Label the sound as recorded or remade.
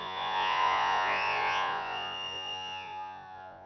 remade